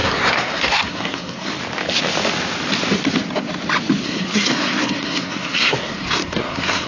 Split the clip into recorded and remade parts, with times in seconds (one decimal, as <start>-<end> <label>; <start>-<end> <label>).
0.0-1.5 remade; 1.5-4.0 recorded; 4.0-6.9 remade